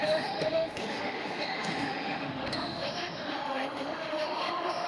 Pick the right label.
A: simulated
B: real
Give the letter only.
A